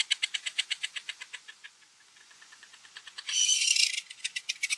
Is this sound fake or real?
fake